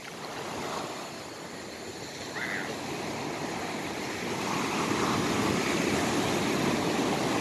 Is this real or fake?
real